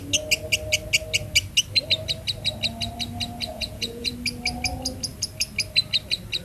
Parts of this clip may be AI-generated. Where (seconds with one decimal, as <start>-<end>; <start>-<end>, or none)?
3.5-4.1